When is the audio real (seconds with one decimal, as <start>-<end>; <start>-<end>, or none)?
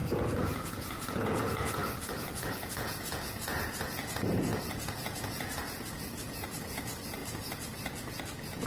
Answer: none